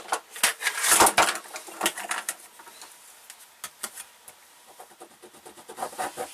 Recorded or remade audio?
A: recorded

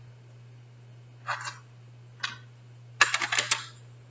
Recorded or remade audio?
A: recorded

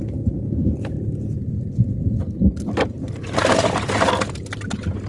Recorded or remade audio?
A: recorded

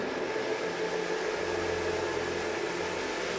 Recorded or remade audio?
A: recorded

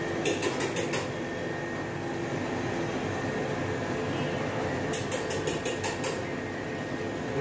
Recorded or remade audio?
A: recorded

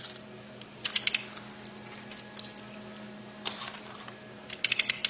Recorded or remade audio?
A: recorded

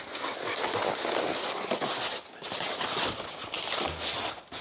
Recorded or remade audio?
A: recorded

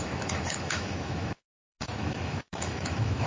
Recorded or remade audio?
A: remade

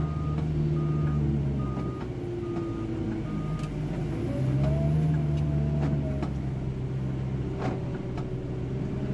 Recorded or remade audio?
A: recorded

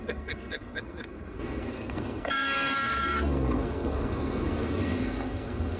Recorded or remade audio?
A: remade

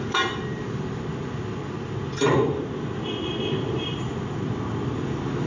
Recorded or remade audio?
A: recorded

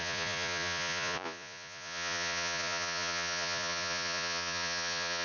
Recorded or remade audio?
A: remade